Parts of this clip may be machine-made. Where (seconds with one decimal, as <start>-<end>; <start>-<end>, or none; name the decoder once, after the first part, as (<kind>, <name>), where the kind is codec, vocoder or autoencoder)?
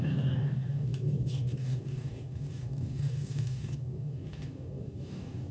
0.0-5.5 (codec, DAC)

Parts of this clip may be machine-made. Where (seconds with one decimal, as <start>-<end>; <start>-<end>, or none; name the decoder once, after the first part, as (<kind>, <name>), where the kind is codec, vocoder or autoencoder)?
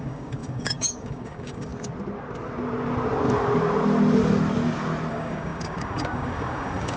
0.0-1.7 (codec, DAC); 5.1-7.0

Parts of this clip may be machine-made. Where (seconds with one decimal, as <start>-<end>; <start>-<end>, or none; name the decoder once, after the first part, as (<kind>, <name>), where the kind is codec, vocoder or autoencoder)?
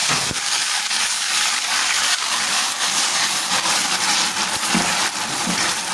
0.0-3.5 (codec, DAC)